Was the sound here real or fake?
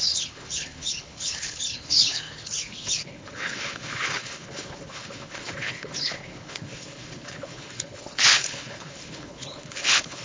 fake